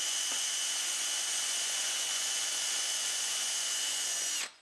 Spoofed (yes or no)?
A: yes